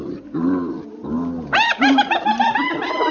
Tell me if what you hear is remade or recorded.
recorded